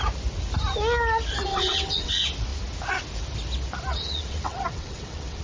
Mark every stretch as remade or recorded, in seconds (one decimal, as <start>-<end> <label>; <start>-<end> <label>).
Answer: 0.0-1.5 recorded; 1.5-2.1 remade; 2.1-3.9 recorded; 3.9-5.4 remade

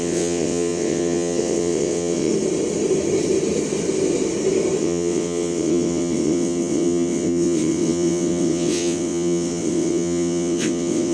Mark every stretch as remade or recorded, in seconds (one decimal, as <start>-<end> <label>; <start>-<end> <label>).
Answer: 0.0-2.3 remade; 2.3-4.8 recorded; 4.8-11.1 remade

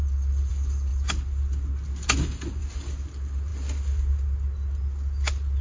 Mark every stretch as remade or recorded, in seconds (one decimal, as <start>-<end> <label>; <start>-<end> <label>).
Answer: 0.0-5.6 recorded

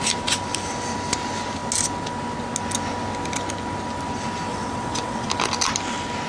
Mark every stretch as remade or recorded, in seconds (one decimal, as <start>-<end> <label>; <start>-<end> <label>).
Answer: 0.0-4.5 recorded; 4.5-5.3 remade; 5.3-6.3 recorded

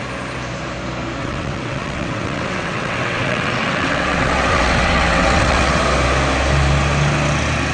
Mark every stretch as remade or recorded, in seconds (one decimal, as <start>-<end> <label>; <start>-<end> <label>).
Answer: 0.0-1.2 recorded; 1.2-5.8 remade; 5.8-7.7 recorded

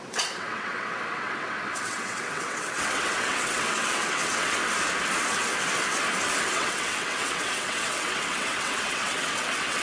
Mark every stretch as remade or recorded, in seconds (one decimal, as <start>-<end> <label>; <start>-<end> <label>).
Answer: 0.0-4.6 remade; 4.6-6.5 recorded; 6.5-9.8 remade

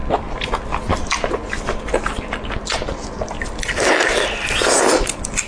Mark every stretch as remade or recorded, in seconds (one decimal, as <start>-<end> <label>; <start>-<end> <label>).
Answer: 0.0-5.5 recorded

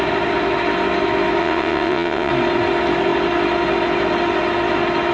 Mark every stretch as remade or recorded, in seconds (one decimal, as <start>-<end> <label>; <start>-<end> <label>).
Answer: 0.0-1.4 recorded; 1.4-2.3 remade; 2.3-5.1 recorded